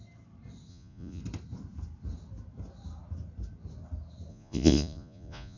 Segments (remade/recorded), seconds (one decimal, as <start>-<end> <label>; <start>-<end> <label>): 0.0-0.7 recorded; 0.7-1.2 remade; 1.2-4.3 recorded; 4.3-5.6 remade